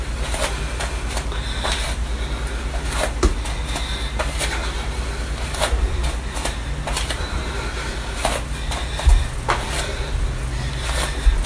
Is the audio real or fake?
real